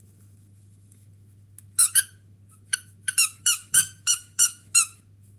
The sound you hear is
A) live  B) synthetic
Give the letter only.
B